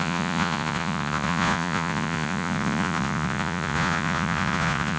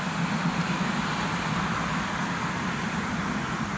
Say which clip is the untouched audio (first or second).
second